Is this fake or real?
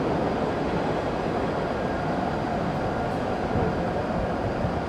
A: real